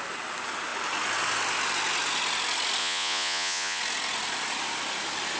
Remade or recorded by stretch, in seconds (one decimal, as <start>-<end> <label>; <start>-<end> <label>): 0.0-2.8 recorded; 2.8-3.8 remade; 3.8-5.4 recorded